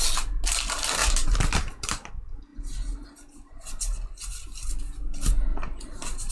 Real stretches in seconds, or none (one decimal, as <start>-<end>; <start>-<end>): 0.0-1.0; 2.1-5.5